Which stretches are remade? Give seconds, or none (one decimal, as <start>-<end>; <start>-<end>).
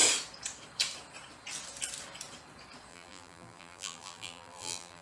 2.9-5.0